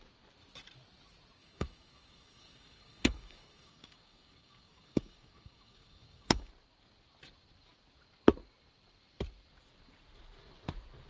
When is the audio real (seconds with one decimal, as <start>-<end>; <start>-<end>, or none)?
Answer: 0.0-1.4; 6.5-11.1